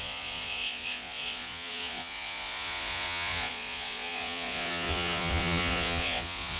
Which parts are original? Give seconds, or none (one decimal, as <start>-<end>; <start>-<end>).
none